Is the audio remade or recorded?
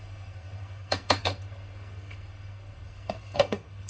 remade